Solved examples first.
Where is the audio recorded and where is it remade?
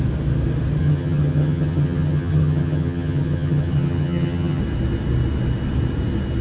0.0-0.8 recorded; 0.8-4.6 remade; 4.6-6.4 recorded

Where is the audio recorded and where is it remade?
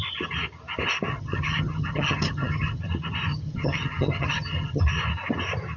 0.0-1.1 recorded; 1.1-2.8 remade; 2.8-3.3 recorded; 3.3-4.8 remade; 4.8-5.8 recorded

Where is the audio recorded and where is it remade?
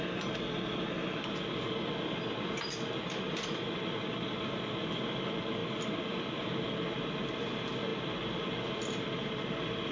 0.0-9.9 recorded